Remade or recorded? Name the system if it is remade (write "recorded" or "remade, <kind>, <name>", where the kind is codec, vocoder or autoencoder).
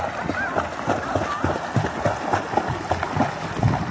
recorded